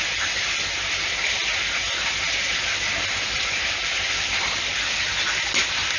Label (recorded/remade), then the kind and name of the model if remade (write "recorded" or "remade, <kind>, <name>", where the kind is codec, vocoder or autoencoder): recorded